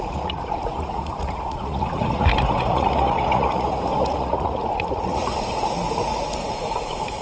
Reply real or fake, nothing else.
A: fake